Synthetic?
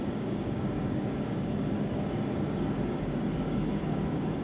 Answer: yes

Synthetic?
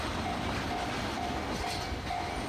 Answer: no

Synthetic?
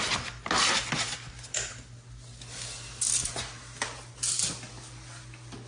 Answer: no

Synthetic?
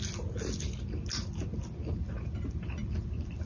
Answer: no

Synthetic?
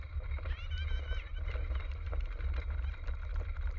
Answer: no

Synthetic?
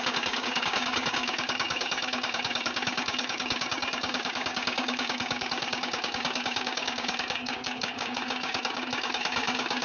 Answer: yes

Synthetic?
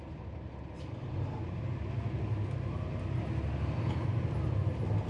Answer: no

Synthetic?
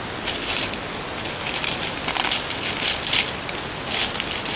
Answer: no